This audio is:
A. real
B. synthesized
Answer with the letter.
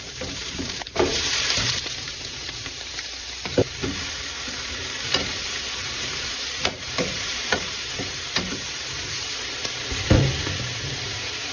B